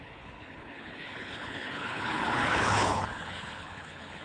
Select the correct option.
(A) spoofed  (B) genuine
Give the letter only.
A